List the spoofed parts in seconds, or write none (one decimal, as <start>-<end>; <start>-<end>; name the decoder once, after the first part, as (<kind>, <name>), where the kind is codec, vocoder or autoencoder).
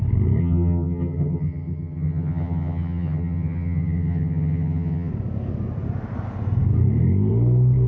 0.4-5.1 (vocoder, HiFi-GAN)